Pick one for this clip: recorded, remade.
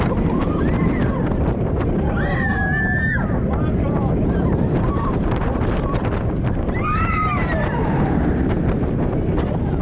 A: remade